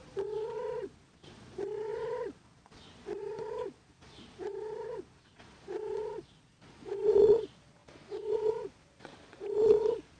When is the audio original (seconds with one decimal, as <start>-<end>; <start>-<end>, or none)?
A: none